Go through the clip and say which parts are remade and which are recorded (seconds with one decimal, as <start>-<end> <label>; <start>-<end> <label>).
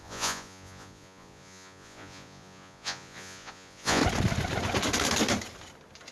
0.0-4.0 remade; 4.0-6.1 recorded